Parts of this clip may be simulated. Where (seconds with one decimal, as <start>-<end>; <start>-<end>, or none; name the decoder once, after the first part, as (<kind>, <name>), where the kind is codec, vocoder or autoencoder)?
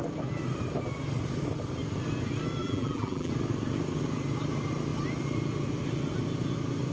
2.6-3.3 (vocoder, BigVGAN v2)